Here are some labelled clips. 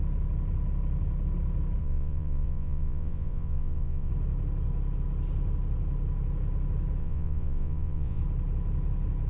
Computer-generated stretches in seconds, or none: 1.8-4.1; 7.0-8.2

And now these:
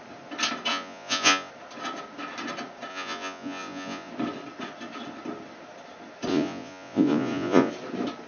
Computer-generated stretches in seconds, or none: 0.7-1.5; 2.9-4.1; 6.3-7.7

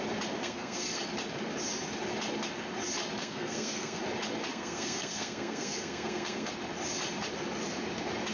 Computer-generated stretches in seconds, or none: 0.4-1.0; 3.2-4.0; 4.5-6.5

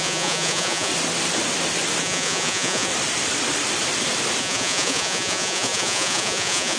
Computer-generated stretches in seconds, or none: 0.0-0.9; 2.0-2.9; 4.4-6.8

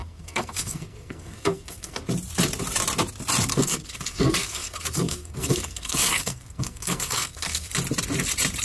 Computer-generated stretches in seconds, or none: 0.0-2.0; 3.5-7.7

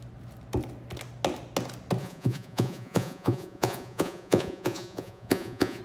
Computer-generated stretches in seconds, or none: 2.0-5.8

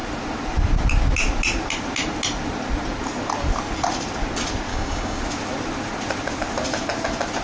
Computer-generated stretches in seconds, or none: 4.7-5.2

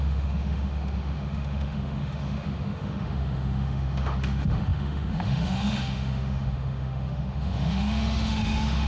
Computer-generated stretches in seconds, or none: 0.0-8.9